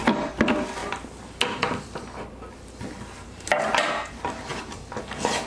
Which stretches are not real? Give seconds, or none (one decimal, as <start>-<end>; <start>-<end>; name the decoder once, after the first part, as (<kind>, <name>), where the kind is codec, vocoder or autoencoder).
none